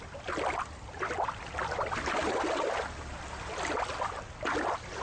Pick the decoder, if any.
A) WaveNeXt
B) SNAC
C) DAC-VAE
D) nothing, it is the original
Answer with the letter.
D